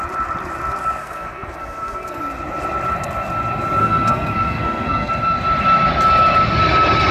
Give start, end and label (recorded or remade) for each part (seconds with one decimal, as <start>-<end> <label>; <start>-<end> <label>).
0.0-1.0 recorded; 1.0-2.2 remade; 2.2-3.8 recorded; 3.8-5.1 remade; 5.1-7.1 recorded